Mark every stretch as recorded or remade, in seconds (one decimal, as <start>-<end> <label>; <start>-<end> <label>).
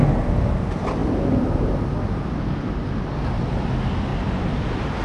0.0-4.1 recorded; 4.1-5.0 remade